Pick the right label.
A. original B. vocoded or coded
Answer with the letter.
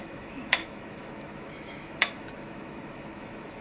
B